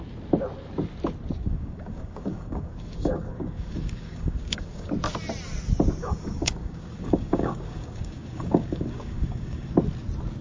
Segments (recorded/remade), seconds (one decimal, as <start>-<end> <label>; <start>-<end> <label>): 0.0-1.4 recorded; 1.4-4.9 remade; 4.9-6.0 recorded; 6.0-9.7 remade; 9.7-10.4 recorded